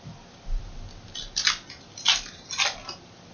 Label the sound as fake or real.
real